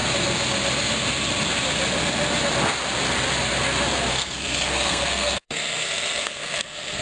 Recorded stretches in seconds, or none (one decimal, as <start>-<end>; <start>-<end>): 0.0-4.1

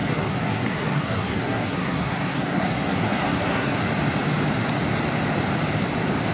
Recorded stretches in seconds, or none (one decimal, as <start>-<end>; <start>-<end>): 3.8-6.3